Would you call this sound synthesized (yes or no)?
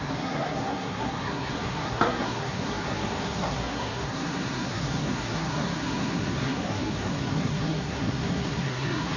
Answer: yes